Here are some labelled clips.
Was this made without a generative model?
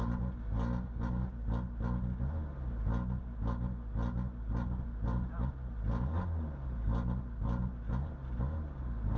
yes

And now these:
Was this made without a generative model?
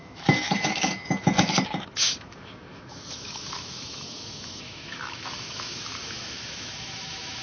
no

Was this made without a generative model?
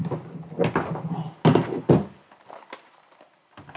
yes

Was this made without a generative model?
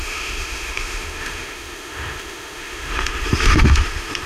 no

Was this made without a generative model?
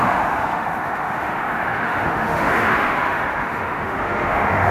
no